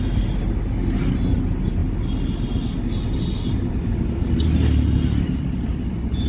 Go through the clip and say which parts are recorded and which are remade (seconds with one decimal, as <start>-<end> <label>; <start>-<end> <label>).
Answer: 0.0-6.3 recorded